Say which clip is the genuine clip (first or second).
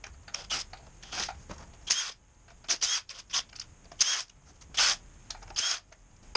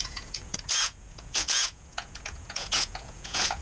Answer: first